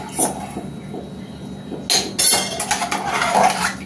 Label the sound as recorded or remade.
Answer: recorded